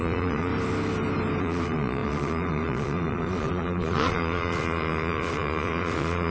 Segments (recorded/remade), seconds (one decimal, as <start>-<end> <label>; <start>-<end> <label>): 0.0-0.5 remade; 0.5-1.4 recorded; 1.4-6.3 remade